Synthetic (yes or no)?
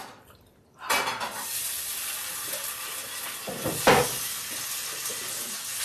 no